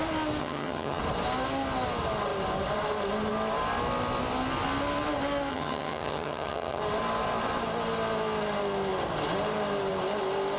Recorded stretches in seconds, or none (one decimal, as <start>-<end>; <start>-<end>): 0.0-0.4; 1.0-5.5; 6.8-10.6

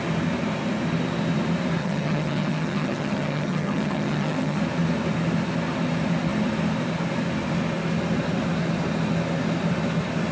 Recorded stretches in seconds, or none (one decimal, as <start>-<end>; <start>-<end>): 0.0-1.8; 4.6-10.3

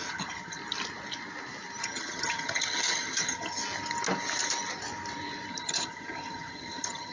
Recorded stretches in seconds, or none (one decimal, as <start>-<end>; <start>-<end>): 0.6-1.8; 3.6-5.5

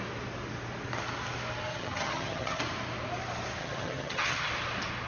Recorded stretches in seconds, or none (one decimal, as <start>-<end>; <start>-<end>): 0.0-1.7; 2.6-3.6; 4.5-5.1

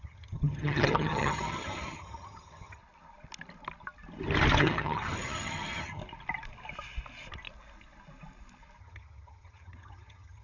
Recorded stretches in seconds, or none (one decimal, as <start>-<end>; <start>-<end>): 2.8-4.6; 6.0-8.8

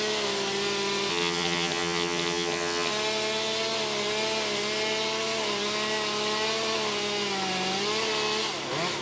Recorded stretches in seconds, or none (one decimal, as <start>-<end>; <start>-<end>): 0.0-1.1; 2.9-9.0